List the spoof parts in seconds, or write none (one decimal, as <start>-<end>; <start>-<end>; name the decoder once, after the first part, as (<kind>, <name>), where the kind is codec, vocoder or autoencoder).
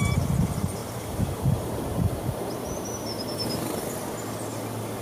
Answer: 0.8-3.8 (vocoder, BigVGAN v2)